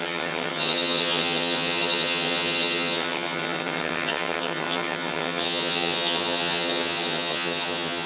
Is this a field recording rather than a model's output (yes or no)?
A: no